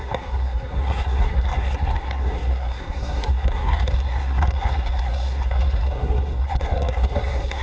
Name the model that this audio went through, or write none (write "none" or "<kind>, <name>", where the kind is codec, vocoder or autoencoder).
codec, SNAC